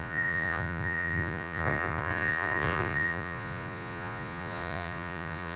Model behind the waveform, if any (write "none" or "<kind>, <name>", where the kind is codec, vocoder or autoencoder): vocoder, Vocos